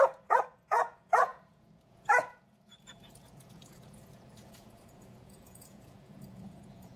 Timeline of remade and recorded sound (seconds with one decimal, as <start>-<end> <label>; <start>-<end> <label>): 0.0-7.0 remade